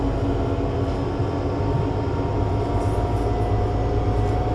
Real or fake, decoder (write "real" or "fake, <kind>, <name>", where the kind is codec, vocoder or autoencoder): real